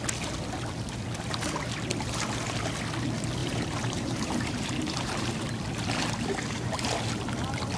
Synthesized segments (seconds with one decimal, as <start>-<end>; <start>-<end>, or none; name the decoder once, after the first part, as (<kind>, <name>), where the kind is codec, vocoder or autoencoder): 3.4-5.4 (vocoder, BigVGAN v2)